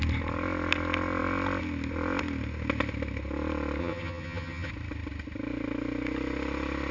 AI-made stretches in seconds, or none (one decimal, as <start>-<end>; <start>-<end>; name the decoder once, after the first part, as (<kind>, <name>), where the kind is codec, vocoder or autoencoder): 3.8-4.7 (vocoder, HiFi-GAN)